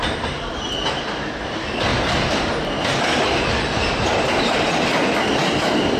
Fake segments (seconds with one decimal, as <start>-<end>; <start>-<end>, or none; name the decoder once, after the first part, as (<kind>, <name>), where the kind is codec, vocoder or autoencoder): 1.9-2.7 (vocoder, BigVGAN v2)